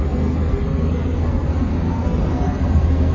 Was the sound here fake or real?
fake